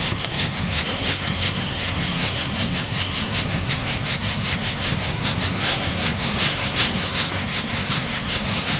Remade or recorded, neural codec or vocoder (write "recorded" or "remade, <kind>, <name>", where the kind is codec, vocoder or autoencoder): remade, codec, SNAC